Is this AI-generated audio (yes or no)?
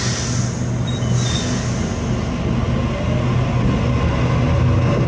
no